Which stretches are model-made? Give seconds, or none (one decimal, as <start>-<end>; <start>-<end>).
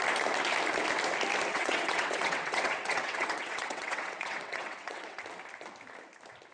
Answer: 1.5-5.2